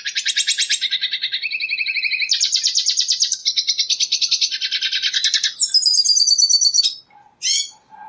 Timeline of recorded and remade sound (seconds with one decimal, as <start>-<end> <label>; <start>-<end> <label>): 0.0-8.1 recorded